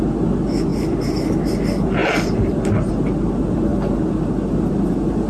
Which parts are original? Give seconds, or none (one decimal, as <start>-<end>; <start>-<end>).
0.0-5.3